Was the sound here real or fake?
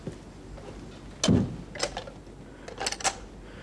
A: real